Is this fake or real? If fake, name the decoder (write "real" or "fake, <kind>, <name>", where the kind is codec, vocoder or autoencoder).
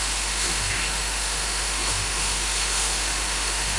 fake, autoencoder, DAC-VAE